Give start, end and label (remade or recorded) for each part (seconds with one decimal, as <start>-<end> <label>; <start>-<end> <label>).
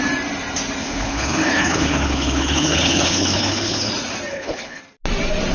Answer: 0.0-0.8 recorded; 0.8-3.9 remade; 3.9-4.3 recorded; 4.3-4.8 remade; 4.8-5.5 recorded